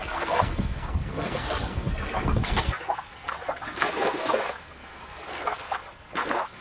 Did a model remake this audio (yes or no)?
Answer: yes